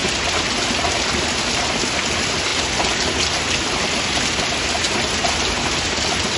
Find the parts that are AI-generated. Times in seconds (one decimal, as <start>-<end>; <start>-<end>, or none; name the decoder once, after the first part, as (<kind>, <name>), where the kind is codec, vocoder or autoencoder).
none